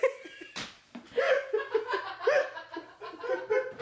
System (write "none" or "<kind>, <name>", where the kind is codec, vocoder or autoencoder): none